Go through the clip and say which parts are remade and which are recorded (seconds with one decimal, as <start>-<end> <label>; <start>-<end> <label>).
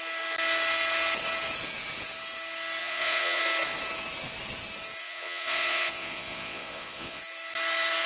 0.0-2.8 recorded; 2.8-3.4 remade; 3.4-5.0 recorded; 5.0-7.2 remade; 7.2-8.1 recorded